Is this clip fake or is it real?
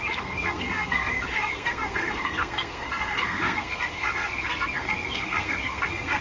fake